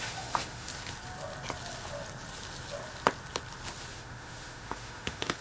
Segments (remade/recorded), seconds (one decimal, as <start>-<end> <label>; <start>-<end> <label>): 0.0-0.7 remade; 0.7-3.9 recorded; 3.9-5.4 remade